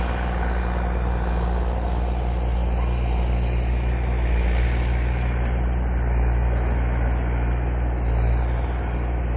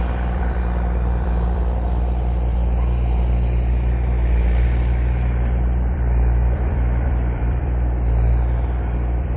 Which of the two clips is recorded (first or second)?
first